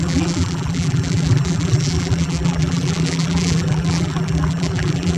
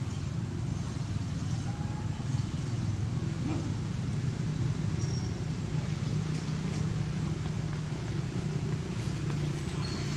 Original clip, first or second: second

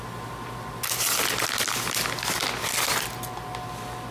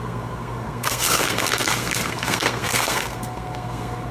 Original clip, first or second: first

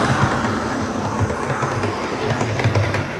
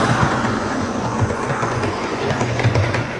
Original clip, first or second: first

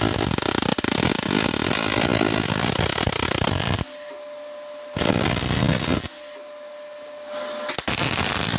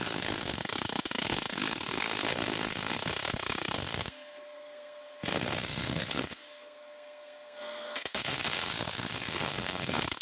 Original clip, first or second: first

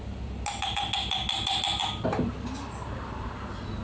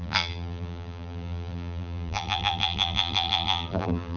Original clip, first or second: first